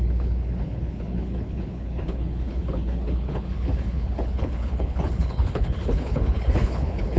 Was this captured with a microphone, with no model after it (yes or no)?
no